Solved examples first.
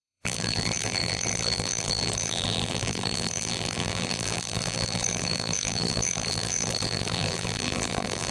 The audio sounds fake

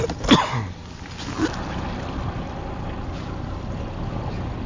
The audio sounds real